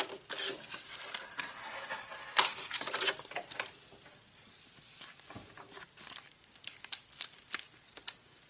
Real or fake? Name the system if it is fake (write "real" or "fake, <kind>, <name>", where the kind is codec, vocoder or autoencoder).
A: real